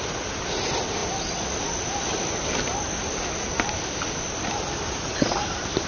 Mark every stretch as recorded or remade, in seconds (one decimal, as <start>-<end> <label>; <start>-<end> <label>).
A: 0.0-5.9 recorded